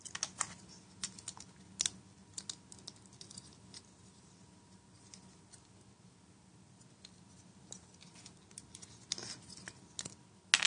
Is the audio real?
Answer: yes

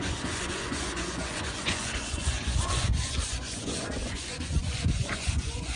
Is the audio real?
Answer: no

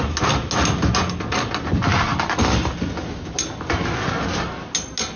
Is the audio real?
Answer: yes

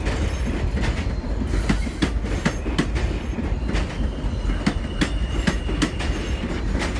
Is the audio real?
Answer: yes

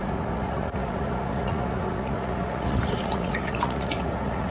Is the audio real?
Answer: no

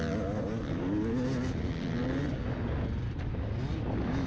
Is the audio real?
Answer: yes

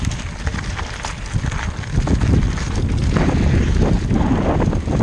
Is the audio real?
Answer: yes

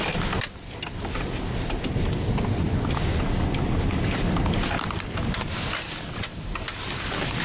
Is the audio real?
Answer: yes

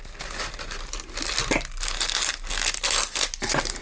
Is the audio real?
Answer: yes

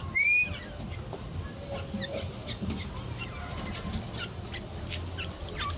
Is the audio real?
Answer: yes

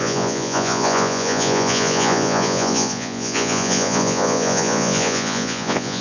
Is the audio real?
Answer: no